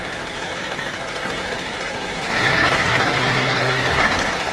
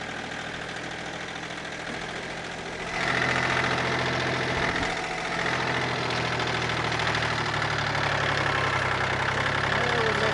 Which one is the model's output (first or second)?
first